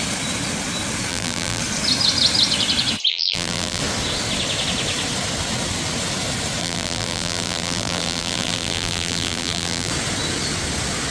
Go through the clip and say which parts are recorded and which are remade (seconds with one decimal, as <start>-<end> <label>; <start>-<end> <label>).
0.0-1.1 recorded; 1.1-1.6 remade; 1.6-3.1 recorded; 3.1-3.8 remade; 3.8-6.6 recorded; 6.6-9.9 remade; 9.9-11.1 recorded